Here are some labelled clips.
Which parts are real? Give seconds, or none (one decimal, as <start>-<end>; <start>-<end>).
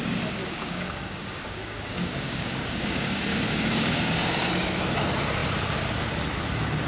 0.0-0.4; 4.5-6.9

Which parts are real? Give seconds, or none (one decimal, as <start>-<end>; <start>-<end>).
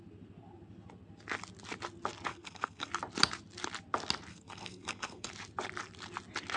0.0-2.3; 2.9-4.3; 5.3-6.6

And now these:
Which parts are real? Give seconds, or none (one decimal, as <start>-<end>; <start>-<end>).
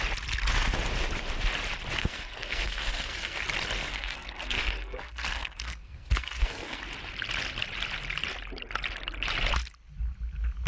0.0-2.0; 3.4-3.8; 6.8-10.7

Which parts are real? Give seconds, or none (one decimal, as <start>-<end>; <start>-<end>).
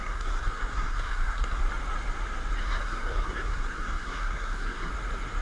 1.6-2.6; 4.9-5.4